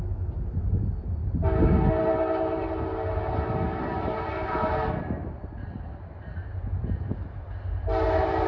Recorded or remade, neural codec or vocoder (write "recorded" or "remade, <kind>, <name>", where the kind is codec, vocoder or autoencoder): recorded